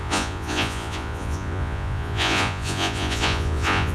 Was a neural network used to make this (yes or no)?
yes